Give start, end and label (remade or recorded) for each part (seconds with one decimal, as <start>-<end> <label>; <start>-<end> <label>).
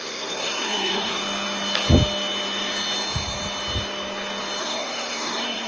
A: 0.0-1.2 remade; 1.2-4.6 recorded; 4.6-5.7 remade